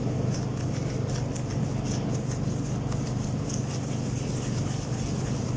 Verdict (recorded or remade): recorded